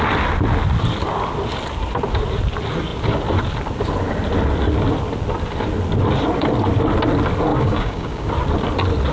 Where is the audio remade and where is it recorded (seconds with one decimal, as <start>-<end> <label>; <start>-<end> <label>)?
0.0-7.5 recorded; 7.5-8.3 remade; 8.3-9.1 recorded